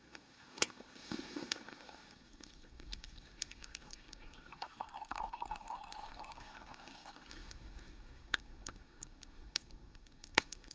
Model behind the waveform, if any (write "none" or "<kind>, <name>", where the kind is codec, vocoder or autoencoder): codec, SNAC